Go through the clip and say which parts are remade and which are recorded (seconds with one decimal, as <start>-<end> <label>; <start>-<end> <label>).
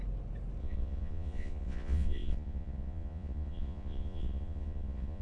0.0-0.6 recorded; 0.6-5.2 remade